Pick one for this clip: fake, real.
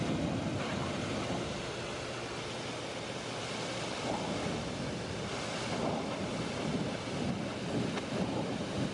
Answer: real